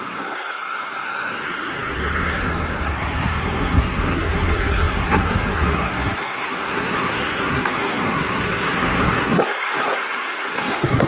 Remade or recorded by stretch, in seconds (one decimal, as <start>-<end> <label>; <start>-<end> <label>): 0.0-11.1 remade